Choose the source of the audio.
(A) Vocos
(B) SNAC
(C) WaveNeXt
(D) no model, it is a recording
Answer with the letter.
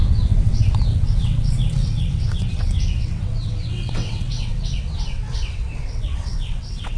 C